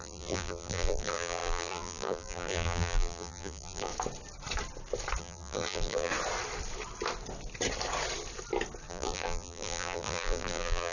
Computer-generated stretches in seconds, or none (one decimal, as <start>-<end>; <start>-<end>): 0.0-3.9; 5.2-6.1; 8.9-10.9